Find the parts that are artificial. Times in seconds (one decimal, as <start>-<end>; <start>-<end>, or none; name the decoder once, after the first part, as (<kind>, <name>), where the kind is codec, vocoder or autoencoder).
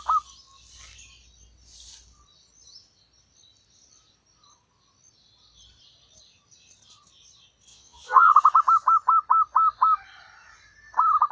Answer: 7.7-8.3 (vocoder, Vocos)